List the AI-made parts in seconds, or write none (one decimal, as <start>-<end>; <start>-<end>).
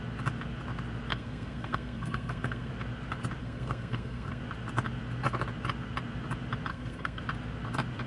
1.1-2.7; 3.4-4.4; 6.7-7.2